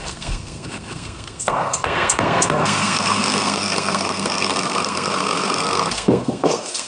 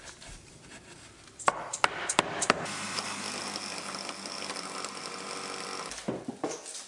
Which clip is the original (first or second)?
second